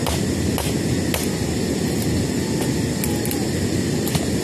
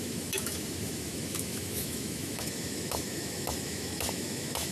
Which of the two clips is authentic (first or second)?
first